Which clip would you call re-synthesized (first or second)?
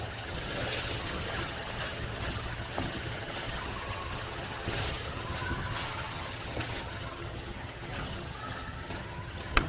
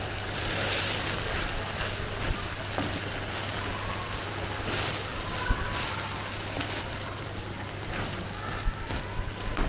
first